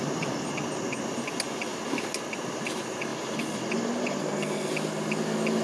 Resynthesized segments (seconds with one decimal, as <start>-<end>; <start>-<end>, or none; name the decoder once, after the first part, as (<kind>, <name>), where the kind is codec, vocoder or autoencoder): 4.2-4.7 (codec, SNAC)